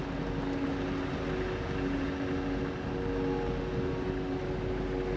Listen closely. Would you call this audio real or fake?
real